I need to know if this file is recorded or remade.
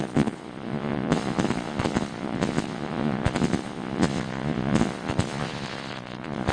remade